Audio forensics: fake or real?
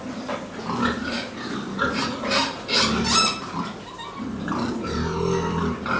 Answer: real